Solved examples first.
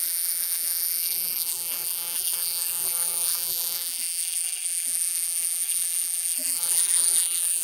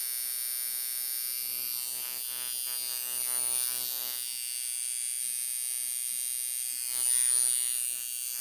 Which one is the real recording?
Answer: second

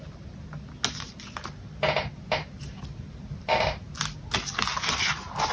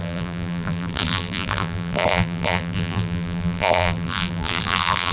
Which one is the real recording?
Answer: first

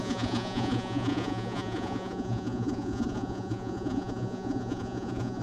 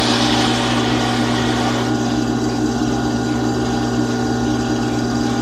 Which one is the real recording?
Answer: second